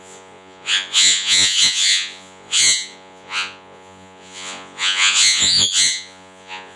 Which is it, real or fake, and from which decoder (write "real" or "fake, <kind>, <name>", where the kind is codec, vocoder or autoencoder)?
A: fake, vocoder, Vocos